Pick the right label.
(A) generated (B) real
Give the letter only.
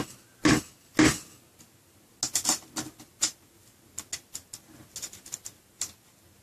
B